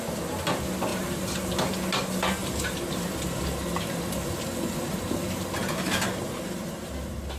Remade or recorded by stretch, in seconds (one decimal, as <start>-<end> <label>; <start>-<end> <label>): 0.0-2.4 recorded; 2.4-3.1 remade; 3.1-5.6 recorded; 5.6-6.9 remade; 6.9-7.4 recorded